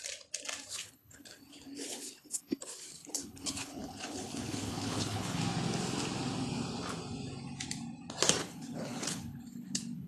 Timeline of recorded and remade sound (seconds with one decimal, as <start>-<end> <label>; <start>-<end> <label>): 0.0-0.7 recorded; 0.7-5.4 remade; 5.4-8.4 recorded; 8.4-10.1 remade